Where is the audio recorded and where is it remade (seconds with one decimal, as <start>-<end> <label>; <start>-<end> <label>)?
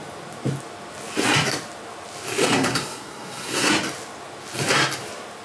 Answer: 0.0-2.4 recorded; 2.4-3.7 remade; 3.7-5.4 recorded